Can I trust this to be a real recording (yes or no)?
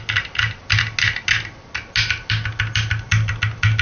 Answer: yes